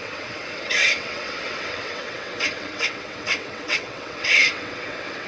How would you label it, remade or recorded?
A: remade